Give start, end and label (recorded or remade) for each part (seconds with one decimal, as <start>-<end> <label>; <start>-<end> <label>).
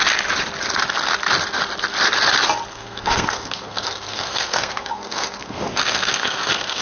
0.0-2.7 recorded; 2.7-6.8 remade